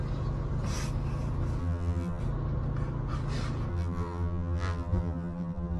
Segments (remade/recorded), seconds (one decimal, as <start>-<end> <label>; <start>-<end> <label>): 0.0-1.6 recorded; 1.6-2.2 remade; 2.2-3.7 recorded; 3.7-5.8 remade

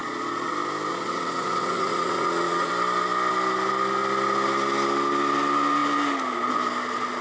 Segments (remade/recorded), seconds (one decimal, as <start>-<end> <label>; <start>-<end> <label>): 0.0-0.5 remade; 0.5-0.9 recorded; 0.9-2.7 remade; 2.7-7.2 recorded

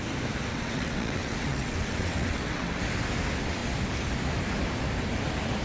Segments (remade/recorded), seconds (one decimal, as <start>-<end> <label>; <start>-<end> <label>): 0.0-0.5 recorded; 0.5-2.8 remade; 2.8-5.6 recorded